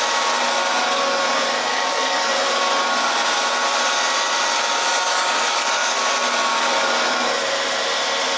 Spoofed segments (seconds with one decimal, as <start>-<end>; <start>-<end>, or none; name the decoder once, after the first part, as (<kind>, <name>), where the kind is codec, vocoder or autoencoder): 1.7-2.3 (codec, DAC); 4.9-6.0